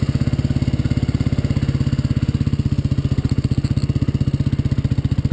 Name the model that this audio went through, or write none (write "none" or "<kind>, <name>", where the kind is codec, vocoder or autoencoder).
none